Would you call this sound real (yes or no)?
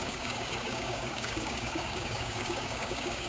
no